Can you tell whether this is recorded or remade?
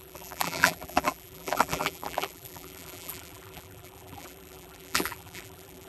remade